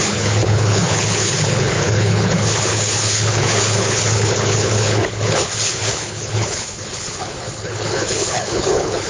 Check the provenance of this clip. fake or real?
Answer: fake